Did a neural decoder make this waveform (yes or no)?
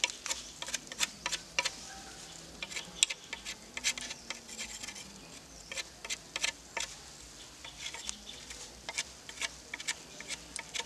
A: no